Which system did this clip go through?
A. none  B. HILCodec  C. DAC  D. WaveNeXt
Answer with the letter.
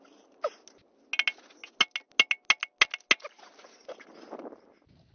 A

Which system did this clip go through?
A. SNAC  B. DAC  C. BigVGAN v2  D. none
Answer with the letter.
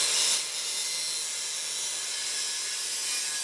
D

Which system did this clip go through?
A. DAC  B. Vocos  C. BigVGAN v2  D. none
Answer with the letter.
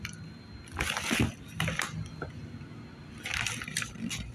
D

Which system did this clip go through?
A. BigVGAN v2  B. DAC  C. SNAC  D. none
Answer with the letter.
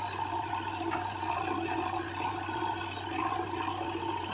D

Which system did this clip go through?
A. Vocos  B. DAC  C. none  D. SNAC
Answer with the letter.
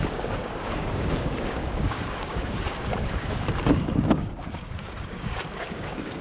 B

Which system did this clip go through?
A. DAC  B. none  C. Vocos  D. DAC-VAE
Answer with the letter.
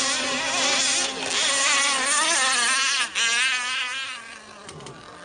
B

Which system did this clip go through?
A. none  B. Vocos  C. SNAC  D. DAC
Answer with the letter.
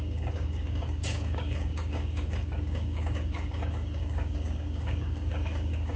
D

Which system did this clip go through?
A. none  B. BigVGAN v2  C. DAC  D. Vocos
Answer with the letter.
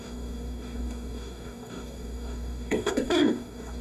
C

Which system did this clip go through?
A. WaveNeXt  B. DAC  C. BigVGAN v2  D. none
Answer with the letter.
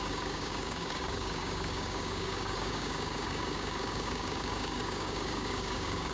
B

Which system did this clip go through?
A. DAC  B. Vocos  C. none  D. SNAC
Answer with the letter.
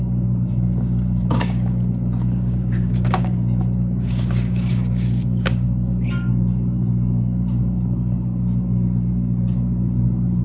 A